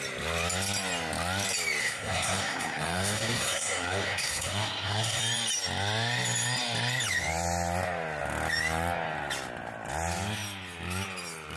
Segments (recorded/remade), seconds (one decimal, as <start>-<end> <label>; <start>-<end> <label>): 0.0-1.8 recorded; 1.8-5.2 remade; 5.2-11.6 recorded